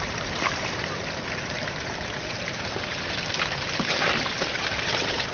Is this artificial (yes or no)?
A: yes